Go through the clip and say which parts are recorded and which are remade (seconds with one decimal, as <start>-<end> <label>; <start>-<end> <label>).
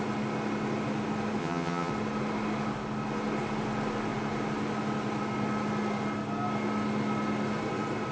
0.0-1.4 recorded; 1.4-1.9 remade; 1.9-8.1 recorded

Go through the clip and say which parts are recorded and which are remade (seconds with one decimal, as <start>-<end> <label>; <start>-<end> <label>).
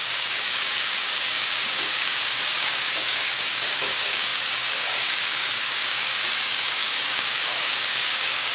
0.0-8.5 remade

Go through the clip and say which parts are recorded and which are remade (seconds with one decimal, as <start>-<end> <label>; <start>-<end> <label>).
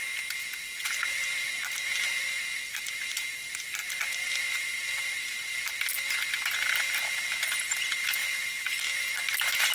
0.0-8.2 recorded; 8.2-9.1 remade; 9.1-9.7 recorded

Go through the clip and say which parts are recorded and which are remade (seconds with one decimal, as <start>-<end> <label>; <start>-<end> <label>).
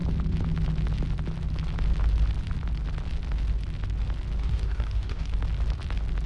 0.0-4.4 recorded; 4.4-5.3 remade; 5.3-6.3 recorded